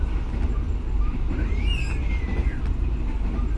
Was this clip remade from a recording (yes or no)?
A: no